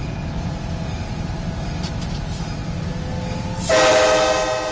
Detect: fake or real real